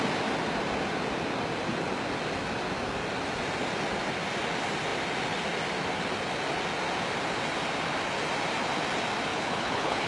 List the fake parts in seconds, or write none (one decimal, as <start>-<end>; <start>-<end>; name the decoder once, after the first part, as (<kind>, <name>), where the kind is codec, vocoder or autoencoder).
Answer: 9.3-10.1 (codec, HILCodec)